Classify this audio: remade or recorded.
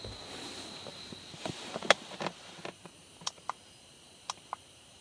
remade